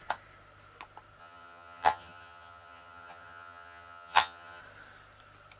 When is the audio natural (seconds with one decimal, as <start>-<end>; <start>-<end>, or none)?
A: 0.0-1.2; 4.6-5.6